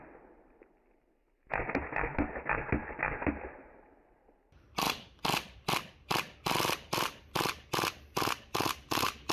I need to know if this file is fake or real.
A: real